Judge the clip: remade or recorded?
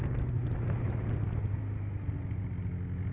recorded